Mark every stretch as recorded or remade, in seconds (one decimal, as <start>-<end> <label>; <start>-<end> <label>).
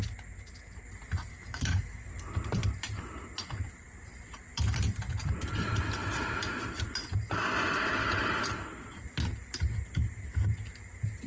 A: 0.0-1.3 recorded; 1.3-2.0 remade; 2.0-11.3 recorded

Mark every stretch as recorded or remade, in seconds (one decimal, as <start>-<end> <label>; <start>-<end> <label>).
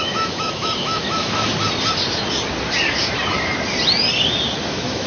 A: 0.0-1.5 remade; 1.5-4.6 recorded; 4.6-5.1 remade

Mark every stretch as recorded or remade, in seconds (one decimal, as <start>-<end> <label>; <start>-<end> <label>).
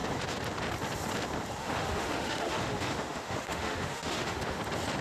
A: 0.0-1.6 recorded; 1.6-4.6 remade; 4.6-5.0 recorded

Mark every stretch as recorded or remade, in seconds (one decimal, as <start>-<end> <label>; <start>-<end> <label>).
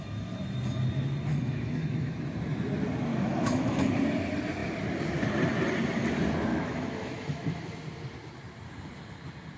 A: 0.0-1.3 recorded; 1.3-2.1 remade; 2.1-3.1 recorded; 3.1-3.9 remade; 3.9-6.5 recorded; 6.5-7.7 remade; 7.7-9.6 recorded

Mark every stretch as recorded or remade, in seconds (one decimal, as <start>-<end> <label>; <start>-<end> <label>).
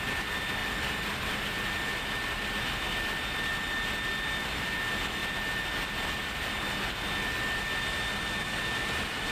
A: 0.0-9.3 recorded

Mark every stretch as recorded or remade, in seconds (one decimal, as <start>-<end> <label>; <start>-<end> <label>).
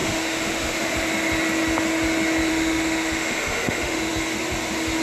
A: 0.0-0.9 remade; 0.9-2.5 recorded; 2.5-4.1 remade; 4.1-5.0 recorded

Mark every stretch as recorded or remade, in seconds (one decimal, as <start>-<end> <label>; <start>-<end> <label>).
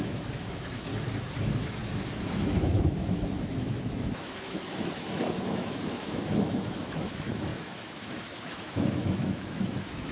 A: 0.0-0.9 remade; 0.9-1.4 recorded; 1.4-10.1 remade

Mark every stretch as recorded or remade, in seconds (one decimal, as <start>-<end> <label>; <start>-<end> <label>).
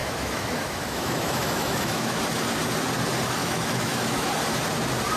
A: 0.0-2.2 remade; 2.2-3.4 recorded; 3.4-4.3 remade; 4.3-5.2 recorded